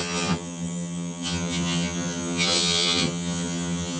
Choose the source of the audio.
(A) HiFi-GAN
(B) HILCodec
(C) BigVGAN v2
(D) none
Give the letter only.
A